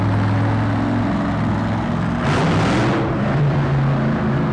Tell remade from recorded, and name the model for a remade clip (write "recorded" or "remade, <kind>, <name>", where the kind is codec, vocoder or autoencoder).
recorded